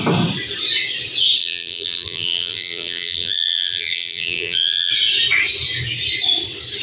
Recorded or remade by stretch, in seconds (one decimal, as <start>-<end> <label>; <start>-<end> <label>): 0.0-1.4 recorded; 1.4-4.9 remade; 4.9-6.8 recorded